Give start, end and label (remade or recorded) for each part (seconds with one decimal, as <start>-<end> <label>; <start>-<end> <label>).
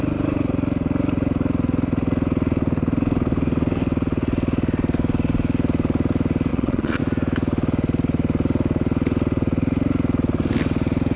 0.0-6.5 recorded; 6.5-7.0 remade; 7.0-11.2 recorded